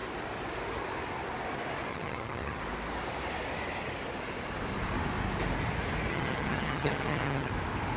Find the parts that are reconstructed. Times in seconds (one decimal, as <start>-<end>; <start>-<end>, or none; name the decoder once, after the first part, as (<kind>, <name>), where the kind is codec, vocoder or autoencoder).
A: 1.9-2.6 (vocoder, HiFi-GAN); 6.1-7.5